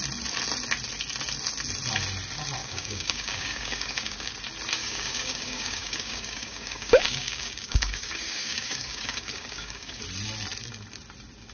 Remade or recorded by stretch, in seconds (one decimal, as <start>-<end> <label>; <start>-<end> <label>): 0.0-2.6 recorded; 2.6-4.3 remade; 4.3-4.8 recorded; 4.8-10.0 remade; 10.0-11.5 recorded